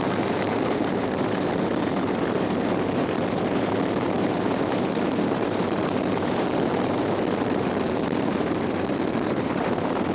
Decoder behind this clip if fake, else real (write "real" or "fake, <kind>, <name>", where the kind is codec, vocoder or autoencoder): fake, vocoder, BigVGAN v2